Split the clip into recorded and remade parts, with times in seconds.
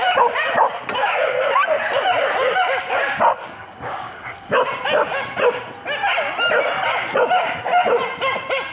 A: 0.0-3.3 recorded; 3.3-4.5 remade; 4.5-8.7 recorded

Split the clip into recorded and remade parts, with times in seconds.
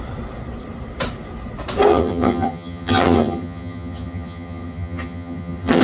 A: 0.0-1.9 recorded; 1.9-5.8 remade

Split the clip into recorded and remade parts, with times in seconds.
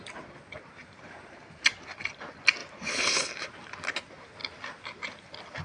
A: 0.0-0.8 recorded; 0.8-1.7 remade; 1.7-2.6 recorded; 2.6-3.1 remade; 3.1-5.6 recorded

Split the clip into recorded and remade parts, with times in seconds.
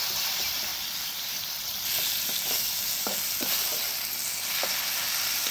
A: 0.0-0.7 recorded; 0.7-1.4 remade; 1.4-5.5 recorded